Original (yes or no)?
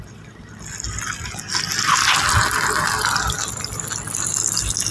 yes